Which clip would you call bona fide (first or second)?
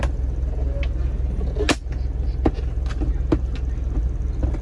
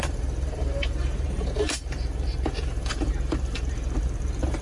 first